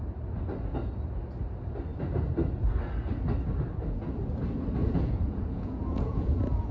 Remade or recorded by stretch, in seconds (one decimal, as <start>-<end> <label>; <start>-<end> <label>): 0.0-4.8 recorded; 4.8-6.7 remade